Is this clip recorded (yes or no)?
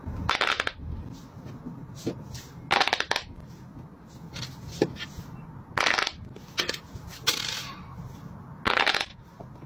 yes